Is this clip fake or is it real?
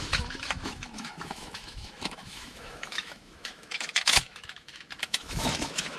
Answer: fake